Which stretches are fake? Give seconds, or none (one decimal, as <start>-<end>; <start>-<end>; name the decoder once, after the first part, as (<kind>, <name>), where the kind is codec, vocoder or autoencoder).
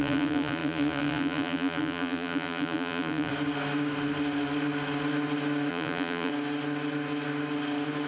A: 0.0-3.3 (vocoder, Vocos); 5.7-6.3